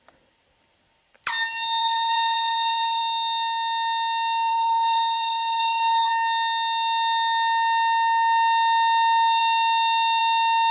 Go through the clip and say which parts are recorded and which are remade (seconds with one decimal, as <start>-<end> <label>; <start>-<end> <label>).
0.0-1.8 recorded; 1.8-3.0 remade; 3.0-4.5 recorded; 4.5-6.1 remade; 6.1-10.7 recorded

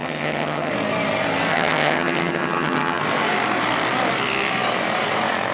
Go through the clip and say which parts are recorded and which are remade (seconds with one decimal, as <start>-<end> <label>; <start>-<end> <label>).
0.0-0.7 remade; 0.7-1.5 recorded; 1.5-3.0 remade; 3.0-5.5 recorded

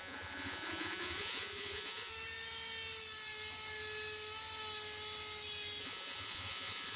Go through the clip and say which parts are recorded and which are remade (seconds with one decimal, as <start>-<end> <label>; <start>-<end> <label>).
0.0-2.1 remade; 2.1-5.8 recorded; 5.8-7.0 remade

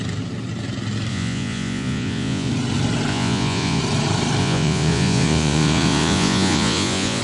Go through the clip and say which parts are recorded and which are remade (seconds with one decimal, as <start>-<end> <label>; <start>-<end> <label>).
0.0-1.1 recorded; 1.1-2.5 remade; 2.5-3.1 recorded; 3.1-3.8 remade; 3.8-4.4 recorded; 4.4-7.2 remade

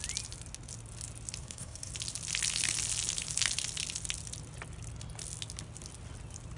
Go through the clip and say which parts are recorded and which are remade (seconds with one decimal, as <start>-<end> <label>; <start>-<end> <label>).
0.0-1.4 recorded; 1.4-1.9 remade; 1.9-6.6 recorded